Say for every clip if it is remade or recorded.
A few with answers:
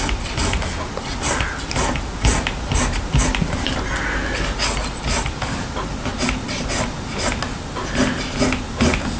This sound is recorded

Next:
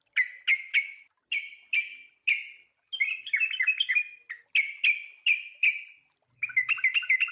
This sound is recorded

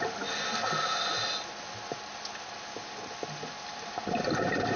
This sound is recorded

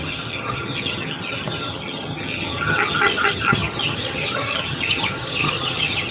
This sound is remade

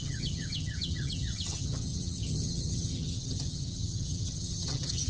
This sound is remade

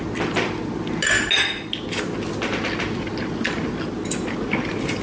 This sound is recorded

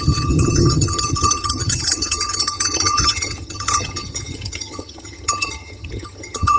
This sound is remade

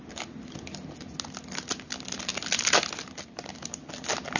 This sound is recorded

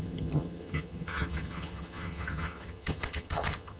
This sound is remade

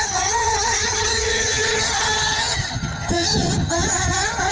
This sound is remade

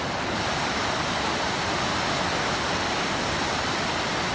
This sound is recorded